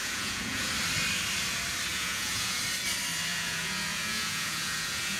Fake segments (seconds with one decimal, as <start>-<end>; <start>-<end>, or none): 0.0-0.7; 1.9-2.6; 3.3-5.2